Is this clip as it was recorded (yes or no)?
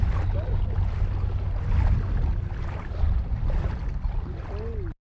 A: yes